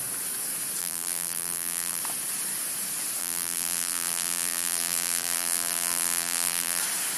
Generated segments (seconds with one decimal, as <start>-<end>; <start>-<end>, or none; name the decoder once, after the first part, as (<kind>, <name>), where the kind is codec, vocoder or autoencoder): 0.8-2.0 (vocoder, BigVGAN v2); 3.2-6.8